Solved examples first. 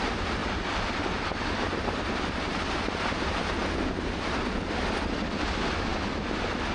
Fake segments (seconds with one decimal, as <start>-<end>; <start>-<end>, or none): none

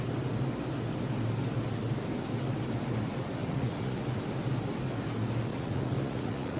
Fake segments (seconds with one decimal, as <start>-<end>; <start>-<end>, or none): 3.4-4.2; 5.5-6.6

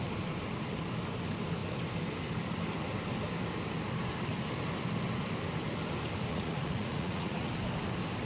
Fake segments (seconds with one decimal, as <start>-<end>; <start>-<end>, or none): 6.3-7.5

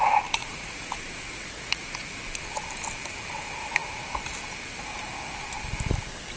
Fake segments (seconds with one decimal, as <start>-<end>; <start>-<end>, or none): 0.4-2.2

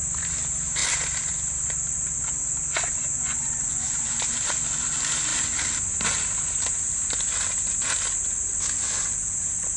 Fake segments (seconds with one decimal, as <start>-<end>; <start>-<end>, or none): 3.0-4.2

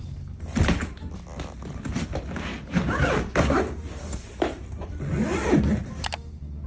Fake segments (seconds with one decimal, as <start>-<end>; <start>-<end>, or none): none